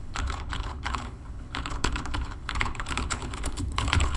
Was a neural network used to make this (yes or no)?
yes